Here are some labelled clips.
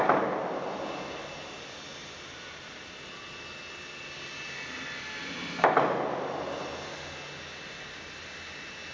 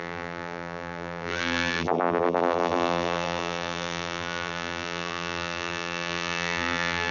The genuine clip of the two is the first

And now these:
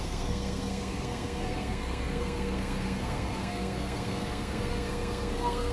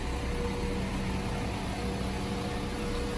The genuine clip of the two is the second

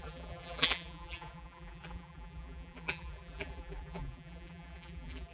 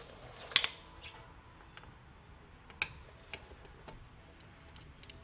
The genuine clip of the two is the second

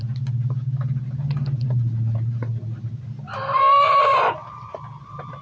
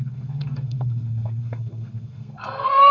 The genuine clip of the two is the first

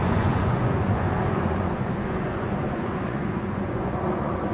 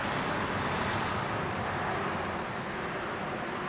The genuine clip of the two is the second